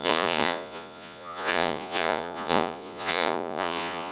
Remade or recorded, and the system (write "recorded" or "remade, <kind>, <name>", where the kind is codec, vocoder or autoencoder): remade, vocoder, Vocos